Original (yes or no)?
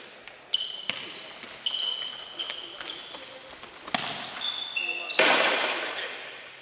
yes